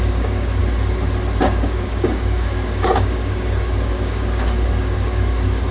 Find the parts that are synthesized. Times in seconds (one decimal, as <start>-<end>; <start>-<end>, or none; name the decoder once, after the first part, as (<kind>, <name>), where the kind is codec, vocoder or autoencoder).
0.0-0.6 (codec, DAC); 1.4-5.7